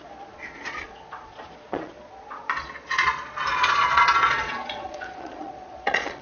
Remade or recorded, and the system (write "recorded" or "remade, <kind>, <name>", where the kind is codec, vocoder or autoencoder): remade, vocoder, Vocos